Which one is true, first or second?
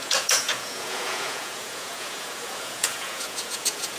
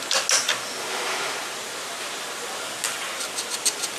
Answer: second